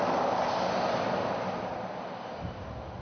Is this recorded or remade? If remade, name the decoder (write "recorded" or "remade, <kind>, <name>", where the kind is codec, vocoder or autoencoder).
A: recorded